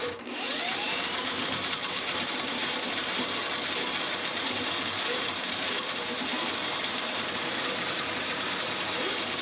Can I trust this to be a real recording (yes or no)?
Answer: no